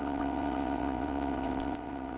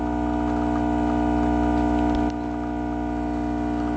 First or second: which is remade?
first